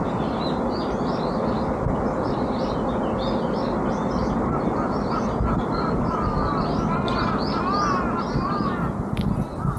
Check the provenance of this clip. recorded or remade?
recorded